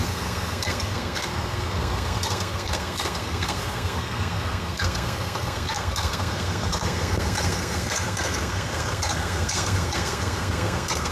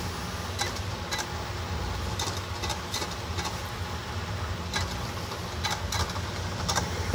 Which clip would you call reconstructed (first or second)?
first